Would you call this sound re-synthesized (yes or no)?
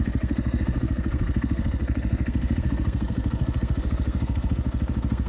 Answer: yes